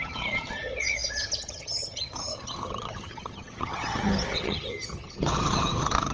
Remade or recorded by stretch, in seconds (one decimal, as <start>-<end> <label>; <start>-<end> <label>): 0.0-6.1 remade